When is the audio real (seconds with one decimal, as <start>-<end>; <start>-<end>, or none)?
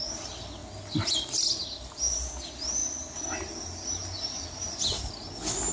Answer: 0.0-5.7